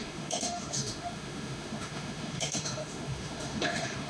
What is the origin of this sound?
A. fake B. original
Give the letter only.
A